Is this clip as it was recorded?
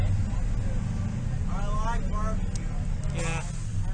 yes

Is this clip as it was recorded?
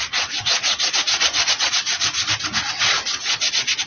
yes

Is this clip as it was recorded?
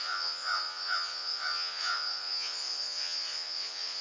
no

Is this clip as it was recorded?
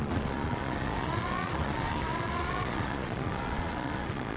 no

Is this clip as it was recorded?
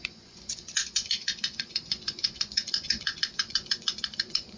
no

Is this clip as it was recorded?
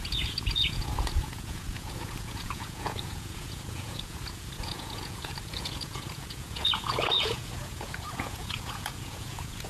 no